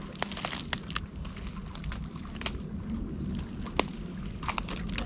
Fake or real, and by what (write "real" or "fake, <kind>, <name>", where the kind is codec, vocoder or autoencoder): real